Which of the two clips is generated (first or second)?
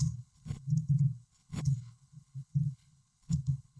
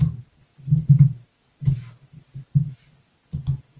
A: first